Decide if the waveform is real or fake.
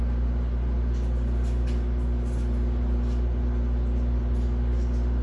real